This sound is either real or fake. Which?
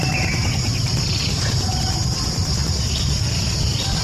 real